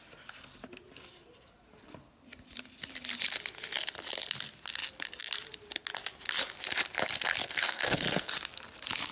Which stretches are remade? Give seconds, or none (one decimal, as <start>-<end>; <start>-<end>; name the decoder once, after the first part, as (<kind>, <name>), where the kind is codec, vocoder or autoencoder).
7.4-8.3 (codec, SNAC)